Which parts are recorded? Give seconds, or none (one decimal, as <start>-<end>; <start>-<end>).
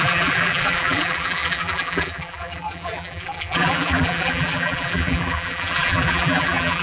none